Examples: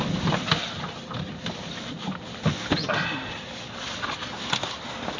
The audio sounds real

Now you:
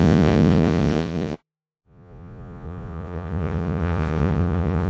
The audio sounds fake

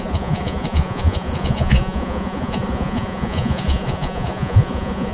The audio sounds fake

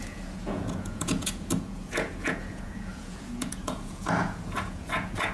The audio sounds fake